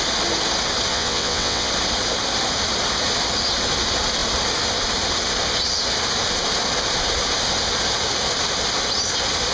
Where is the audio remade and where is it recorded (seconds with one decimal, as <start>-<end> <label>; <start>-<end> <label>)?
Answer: 0.0-0.9 recorded; 0.9-1.7 remade; 1.7-9.5 recorded